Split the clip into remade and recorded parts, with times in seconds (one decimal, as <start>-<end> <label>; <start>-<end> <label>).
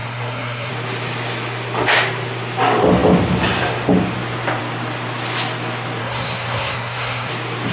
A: 0.0-0.7 remade; 0.7-6.0 recorded; 6.0-7.3 remade; 7.3-7.7 recorded